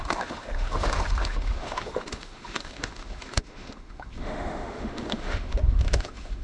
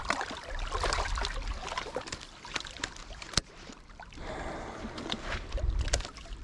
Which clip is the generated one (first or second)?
first